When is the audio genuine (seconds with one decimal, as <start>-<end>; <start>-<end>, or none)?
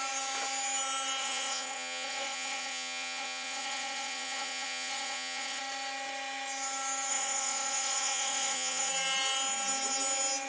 0.0-1.2; 5.6-7.1; 8.9-10.5